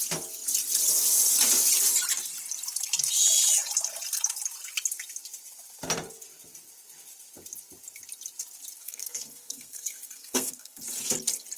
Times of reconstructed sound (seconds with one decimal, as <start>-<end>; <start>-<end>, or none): 8.8-10.8